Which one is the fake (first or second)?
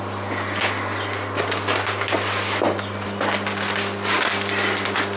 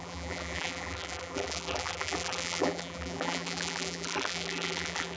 second